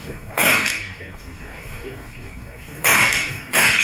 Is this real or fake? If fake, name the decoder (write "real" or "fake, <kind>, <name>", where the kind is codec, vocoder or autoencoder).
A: fake, codec, DAC